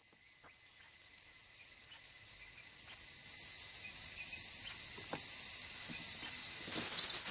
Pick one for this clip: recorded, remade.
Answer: recorded